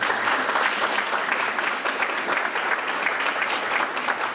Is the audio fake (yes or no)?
no